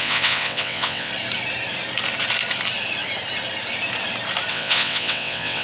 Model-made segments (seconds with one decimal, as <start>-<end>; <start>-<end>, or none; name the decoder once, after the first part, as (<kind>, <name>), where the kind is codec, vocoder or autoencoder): 0.0-1.1 (vocoder, WaveNeXt); 4.5-5.6